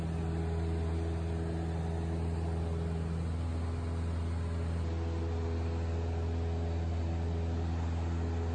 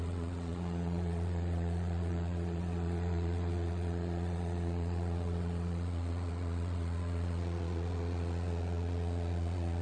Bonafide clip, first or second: first